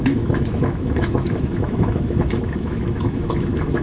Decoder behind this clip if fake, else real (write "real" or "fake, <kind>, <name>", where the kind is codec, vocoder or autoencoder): fake, autoencoder, DAC-VAE